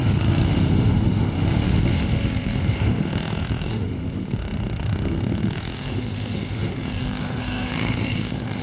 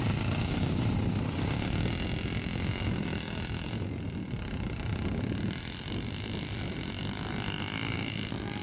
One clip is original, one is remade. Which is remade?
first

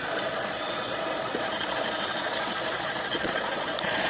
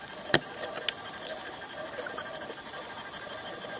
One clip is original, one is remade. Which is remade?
first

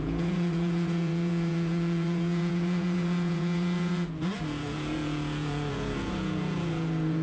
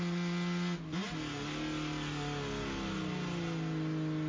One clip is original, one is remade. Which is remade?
first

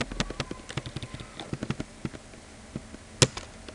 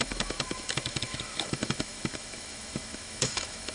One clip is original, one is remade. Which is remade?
second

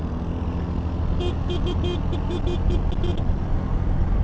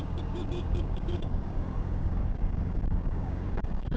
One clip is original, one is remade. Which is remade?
second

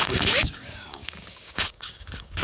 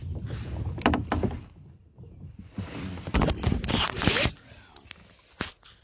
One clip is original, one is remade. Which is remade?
first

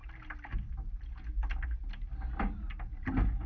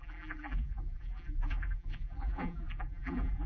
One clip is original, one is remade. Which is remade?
second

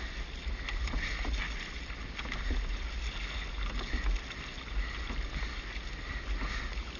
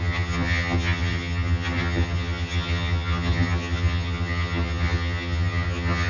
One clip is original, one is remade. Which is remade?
second